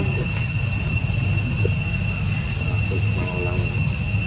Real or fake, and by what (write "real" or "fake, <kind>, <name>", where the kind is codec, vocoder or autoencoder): real